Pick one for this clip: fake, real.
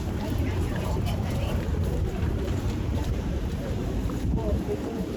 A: fake